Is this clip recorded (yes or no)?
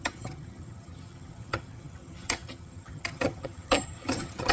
no